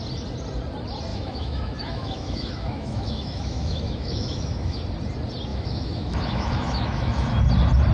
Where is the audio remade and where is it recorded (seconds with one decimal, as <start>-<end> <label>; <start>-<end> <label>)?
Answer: 0.0-1.1 recorded; 1.1-4.8 remade; 4.8-5.5 recorded; 5.5-7.4 remade; 7.4-7.9 recorded